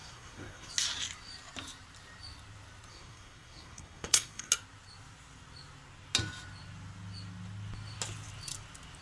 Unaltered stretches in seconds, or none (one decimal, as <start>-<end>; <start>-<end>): 0.7-2.9; 4.5-9.0